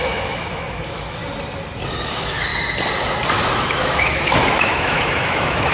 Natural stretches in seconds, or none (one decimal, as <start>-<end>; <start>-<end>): 1.2-2.0; 2.5-3.6